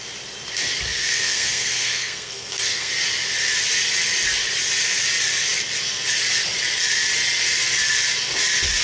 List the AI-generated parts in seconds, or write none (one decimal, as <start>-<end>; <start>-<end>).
1.0-2.9